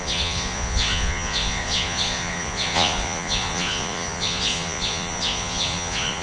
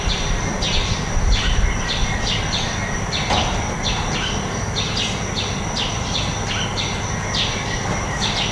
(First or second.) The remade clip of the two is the first